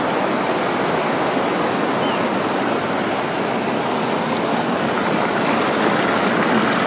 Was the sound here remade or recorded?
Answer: recorded